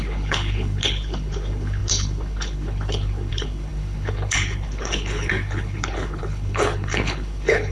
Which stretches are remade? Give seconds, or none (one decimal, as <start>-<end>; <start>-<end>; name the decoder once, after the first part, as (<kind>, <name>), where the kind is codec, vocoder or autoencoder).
0.0-7.7 (codec, HILCodec)